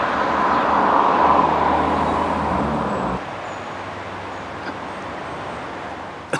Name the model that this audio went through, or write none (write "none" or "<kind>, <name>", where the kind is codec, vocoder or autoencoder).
none